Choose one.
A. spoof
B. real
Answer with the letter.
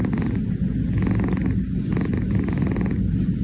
B